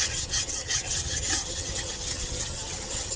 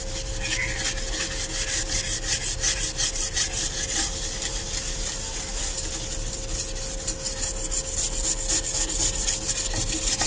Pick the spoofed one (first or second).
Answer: first